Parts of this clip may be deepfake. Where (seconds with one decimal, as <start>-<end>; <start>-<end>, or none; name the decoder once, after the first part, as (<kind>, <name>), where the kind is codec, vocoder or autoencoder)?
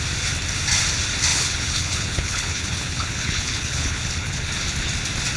1.3-4.5 (codec, HILCodec)